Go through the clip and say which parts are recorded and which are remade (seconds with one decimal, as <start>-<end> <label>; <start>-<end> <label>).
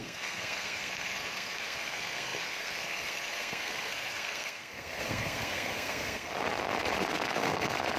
0.0-6.3 remade; 6.3-7.0 recorded; 7.0-8.0 remade